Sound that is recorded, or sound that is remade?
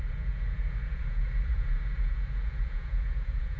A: remade